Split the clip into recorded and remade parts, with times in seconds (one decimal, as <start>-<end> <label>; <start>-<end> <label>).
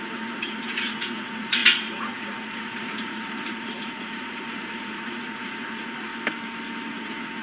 0.0-6.1 remade; 6.1-6.9 recorded; 6.9-7.4 remade